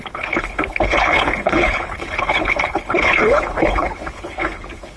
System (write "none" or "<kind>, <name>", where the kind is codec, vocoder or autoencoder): codec, HILCodec